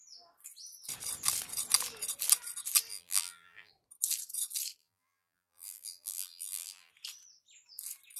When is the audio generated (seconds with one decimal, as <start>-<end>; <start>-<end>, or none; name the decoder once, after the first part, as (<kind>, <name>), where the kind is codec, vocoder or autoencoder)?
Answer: 2.9-3.7 (vocoder, BigVGAN v2); 4.8-6.9

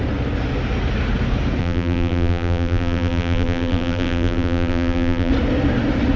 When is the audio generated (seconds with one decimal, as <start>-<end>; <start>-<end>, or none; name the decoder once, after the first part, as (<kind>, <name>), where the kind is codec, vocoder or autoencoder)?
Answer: 1.6-5.3 (vocoder, BigVGAN v2)

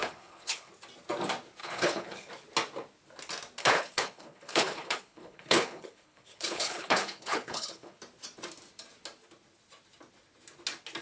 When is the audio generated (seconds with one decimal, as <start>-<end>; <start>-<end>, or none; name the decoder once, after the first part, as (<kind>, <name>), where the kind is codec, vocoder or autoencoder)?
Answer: 0.0-0.7 (codec, HILCodec); 1.6-2.3; 3.6-8.0